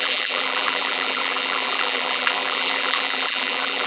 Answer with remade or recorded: remade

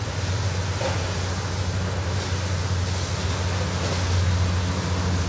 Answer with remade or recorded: recorded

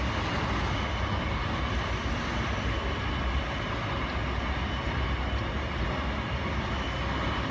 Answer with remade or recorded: recorded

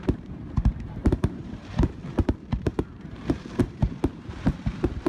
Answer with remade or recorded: remade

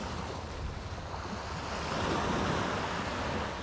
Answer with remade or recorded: recorded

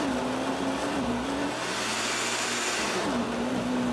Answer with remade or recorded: recorded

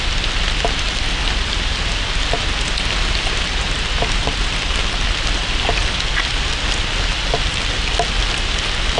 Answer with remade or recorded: recorded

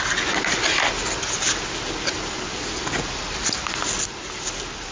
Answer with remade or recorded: recorded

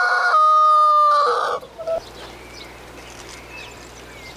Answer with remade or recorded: recorded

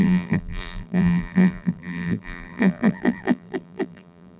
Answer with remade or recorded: remade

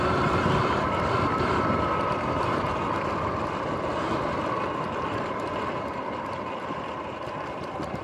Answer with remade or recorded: remade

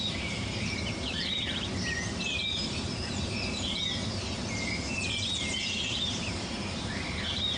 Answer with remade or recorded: remade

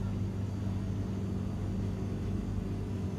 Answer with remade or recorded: recorded